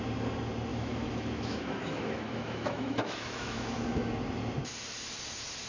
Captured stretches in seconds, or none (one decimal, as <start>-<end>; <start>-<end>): 0.0-0.7; 4.1-5.7